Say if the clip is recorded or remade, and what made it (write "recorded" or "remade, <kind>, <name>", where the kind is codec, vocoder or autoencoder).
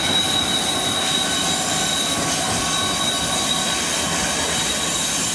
recorded